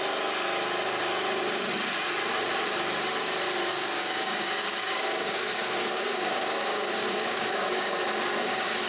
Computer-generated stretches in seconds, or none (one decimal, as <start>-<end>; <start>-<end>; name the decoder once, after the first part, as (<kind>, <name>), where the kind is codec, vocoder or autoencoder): 3.7-8.0 (codec, DAC)